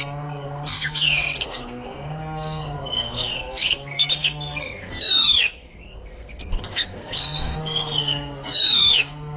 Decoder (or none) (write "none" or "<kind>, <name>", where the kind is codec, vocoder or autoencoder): codec, SNAC